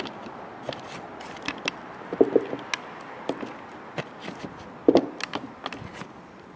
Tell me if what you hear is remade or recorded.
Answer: recorded